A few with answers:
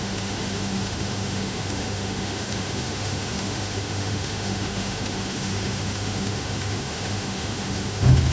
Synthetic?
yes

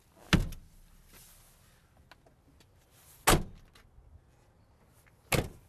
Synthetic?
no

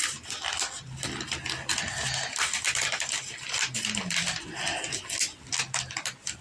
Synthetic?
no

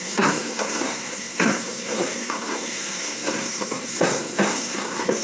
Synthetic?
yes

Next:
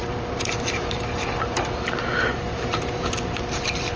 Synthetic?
yes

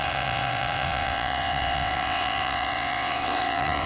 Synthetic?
yes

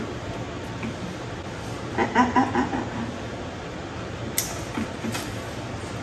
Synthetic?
no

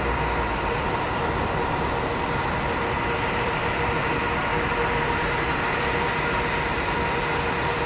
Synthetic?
no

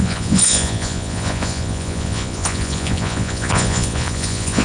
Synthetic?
yes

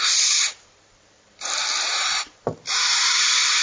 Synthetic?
yes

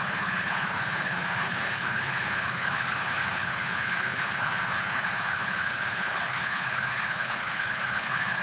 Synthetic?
yes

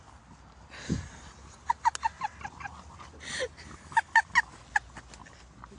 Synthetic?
no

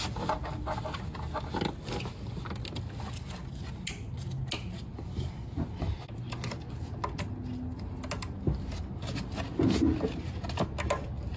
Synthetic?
no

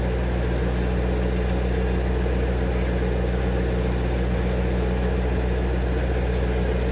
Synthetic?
no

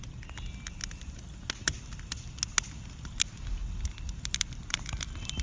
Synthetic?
no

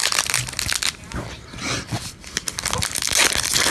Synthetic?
no